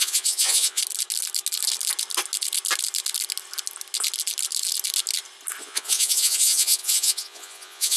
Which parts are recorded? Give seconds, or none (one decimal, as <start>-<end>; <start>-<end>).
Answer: 0.8-5.6

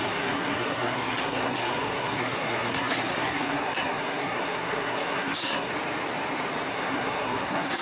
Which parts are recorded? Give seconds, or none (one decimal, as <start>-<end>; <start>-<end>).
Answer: 5.7-6.7

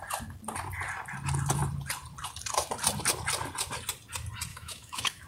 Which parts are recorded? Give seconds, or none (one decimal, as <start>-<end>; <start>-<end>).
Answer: 0.0-4.5